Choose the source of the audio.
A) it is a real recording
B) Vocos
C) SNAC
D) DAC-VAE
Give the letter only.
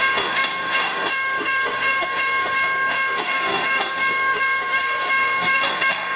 D